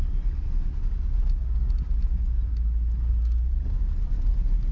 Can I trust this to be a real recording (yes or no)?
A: yes